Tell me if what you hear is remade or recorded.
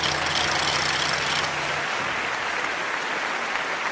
recorded